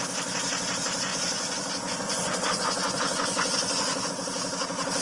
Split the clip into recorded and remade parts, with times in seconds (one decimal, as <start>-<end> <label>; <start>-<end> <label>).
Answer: 0.0-1.1 recorded; 1.1-4.1 remade; 4.1-5.0 recorded